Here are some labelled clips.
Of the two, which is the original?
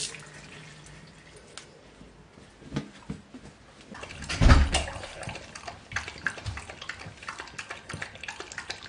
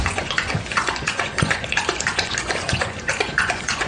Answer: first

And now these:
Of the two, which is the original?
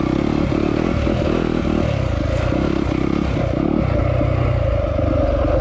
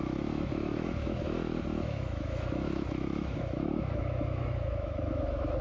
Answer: first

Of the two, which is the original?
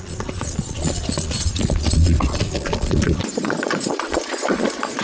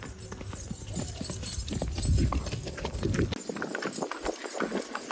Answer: second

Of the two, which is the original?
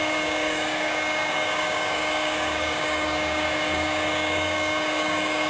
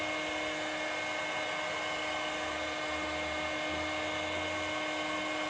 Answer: second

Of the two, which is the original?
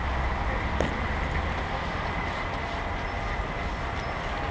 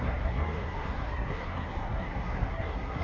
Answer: first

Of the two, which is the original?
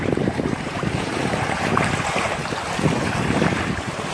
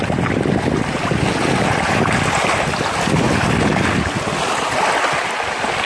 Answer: second